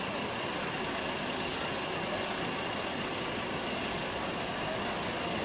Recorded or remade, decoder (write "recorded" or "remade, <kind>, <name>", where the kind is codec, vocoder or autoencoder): recorded